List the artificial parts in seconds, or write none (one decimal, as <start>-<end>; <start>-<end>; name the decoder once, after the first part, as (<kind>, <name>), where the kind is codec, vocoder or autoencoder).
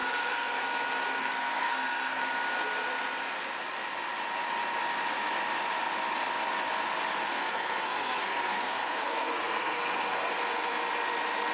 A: 0.0-0.6 (codec, SNAC); 1.2-2.2; 7.3-10.4